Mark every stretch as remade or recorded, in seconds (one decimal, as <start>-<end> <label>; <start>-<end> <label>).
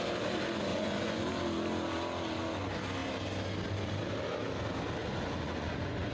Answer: 0.0-0.7 recorded; 0.7-1.3 remade; 1.3-5.0 recorded; 5.0-6.1 remade